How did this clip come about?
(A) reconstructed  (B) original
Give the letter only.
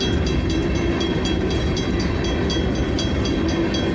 B